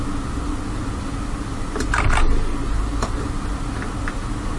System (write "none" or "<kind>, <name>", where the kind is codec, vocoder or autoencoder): none